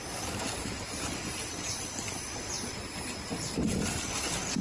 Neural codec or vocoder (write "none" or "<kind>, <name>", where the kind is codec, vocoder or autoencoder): vocoder, BigVGAN v2